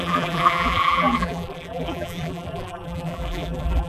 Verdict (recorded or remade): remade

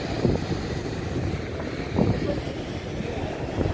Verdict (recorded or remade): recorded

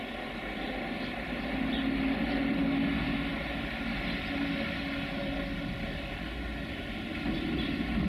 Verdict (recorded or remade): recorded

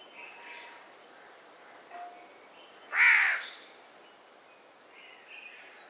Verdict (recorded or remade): recorded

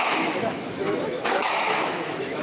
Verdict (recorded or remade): remade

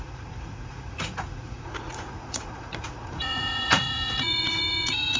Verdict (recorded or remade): remade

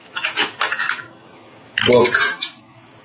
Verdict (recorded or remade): remade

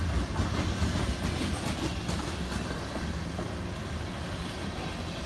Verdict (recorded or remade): recorded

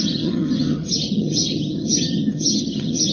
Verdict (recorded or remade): remade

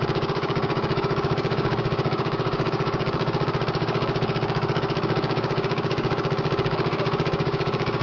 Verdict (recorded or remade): remade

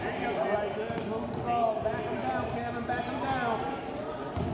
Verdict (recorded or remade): recorded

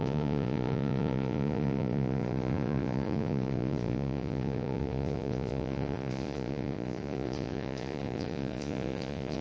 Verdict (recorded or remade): remade